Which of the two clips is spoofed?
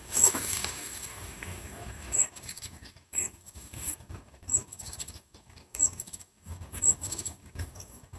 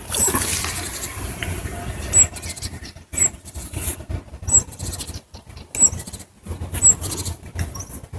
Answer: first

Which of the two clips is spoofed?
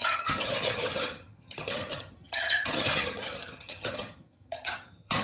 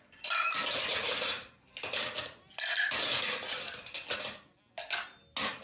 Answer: first